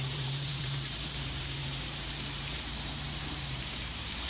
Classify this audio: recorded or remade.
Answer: remade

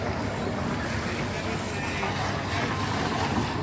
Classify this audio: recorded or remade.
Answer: recorded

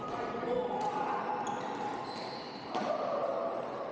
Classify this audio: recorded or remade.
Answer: recorded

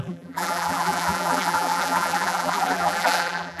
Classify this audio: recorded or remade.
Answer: remade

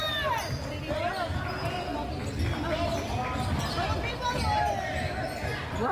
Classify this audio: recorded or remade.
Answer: recorded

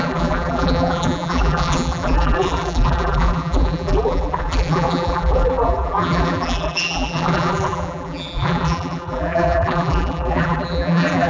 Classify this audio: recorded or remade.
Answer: remade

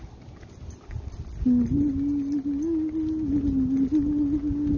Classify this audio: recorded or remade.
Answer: recorded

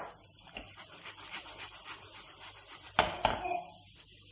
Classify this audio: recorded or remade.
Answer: recorded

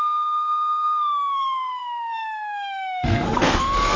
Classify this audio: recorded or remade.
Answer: remade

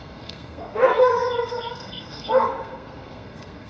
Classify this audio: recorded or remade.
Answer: remade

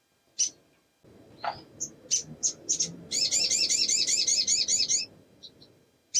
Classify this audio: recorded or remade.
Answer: recorded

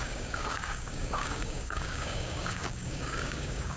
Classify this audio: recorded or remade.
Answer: remade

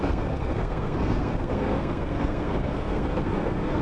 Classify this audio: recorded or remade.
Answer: remade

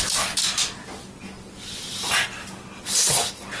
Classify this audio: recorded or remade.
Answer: recorded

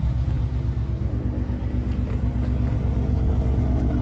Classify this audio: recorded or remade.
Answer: recorded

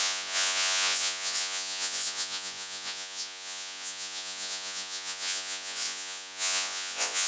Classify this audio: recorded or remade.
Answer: remade